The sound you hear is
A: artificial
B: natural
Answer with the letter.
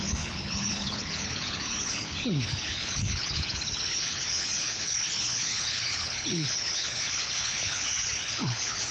A